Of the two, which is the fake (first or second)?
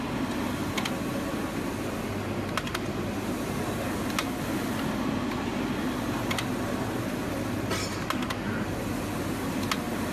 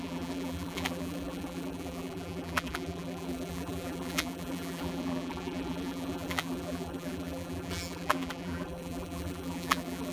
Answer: second